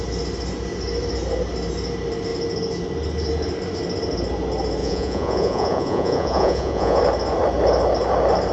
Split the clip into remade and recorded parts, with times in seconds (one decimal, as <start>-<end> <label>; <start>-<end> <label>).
0.0-4.8 recorded; 4.8-7.0 remade; 7.0-8.5 recorded